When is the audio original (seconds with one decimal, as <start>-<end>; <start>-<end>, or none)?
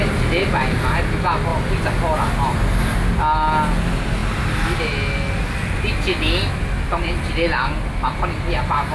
0.0-8.9